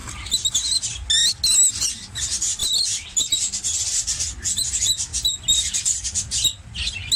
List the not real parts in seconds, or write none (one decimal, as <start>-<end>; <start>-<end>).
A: 0.0-0.5; 2.6-4.2